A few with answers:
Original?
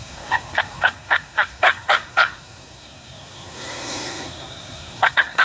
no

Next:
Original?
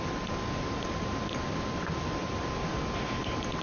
yes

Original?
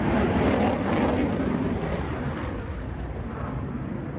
no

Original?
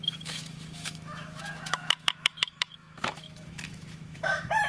no